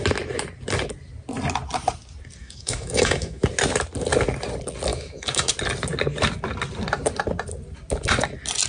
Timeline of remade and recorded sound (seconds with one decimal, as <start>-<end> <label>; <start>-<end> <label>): 0.0-2.4 recorded; 2.4-3.4 remade; 3.4-4.9 recorded; 4.9-5.5 remade; 5.5-8.7 recorded